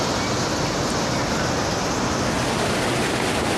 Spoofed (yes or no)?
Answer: no